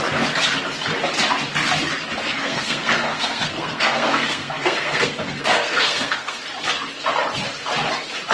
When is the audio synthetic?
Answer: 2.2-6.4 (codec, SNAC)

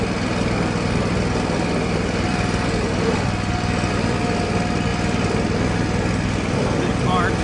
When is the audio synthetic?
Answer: none